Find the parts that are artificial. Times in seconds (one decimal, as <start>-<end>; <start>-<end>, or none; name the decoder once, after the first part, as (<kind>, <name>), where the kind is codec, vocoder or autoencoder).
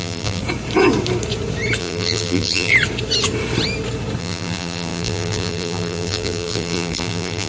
0.0-0.4 (vocoder, BigVGAN v2); 1.8-2.7; 4.2-7.5